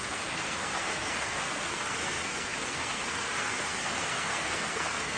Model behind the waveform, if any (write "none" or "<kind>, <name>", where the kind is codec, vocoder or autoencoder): codec, SNAC